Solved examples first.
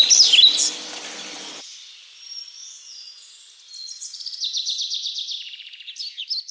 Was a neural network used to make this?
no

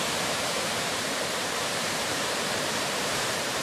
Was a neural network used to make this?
yes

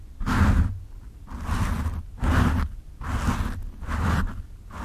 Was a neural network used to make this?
no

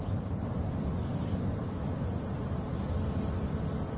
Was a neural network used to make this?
no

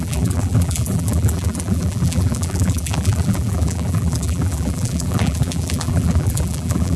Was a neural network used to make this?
yes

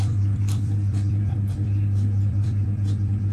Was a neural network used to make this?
yes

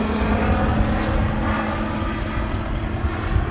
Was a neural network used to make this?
no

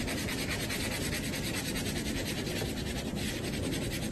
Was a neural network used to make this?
no